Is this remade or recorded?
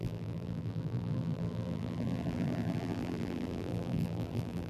remade